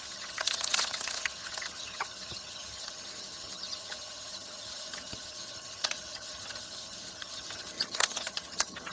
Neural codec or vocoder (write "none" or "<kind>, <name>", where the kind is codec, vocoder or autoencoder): vocoder, HiFi-GAN